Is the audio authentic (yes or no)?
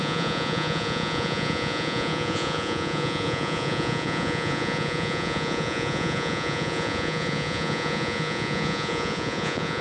no